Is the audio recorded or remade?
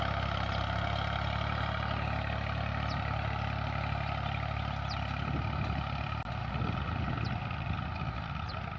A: recorded